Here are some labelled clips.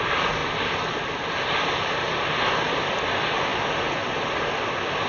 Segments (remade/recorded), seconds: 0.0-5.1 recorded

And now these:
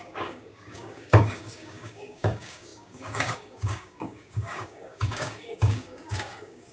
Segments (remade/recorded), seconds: 0.0-6.7 remade

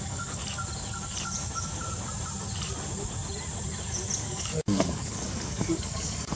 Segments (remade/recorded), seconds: 0.0-0.4 remade; 0.4-4.2 recorded; 4.2-6.4 remade

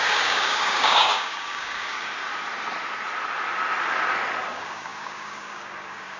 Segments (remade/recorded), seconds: 0.0-2.2 remade; 2.2-4.5 recorded; 4.5-6.2 remade

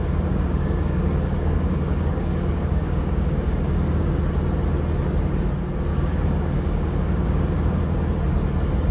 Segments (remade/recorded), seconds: 0.0-4.2 remade; 4.2-5.9 recorded; 5.9-7.8 remade; 7.8-8.9 recorded

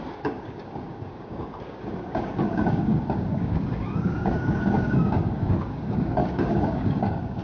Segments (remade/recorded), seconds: 0.0-7.4 remade

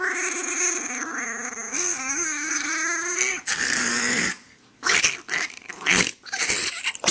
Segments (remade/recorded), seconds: 0.0-1.7 recorded; 1.7-2.7 remade; 2.7-3.3 recorded; 3.3-5.0 remade; 5.0-7.1 recorded